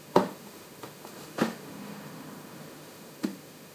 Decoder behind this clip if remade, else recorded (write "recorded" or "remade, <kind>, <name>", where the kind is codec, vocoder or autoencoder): remade, autoencoder, DAC-VAE